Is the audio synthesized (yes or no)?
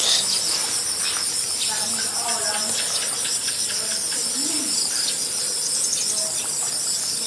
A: no